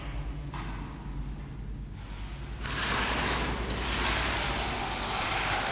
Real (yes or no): yes